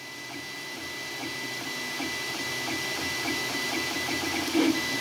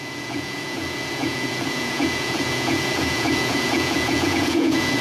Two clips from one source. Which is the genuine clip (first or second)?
first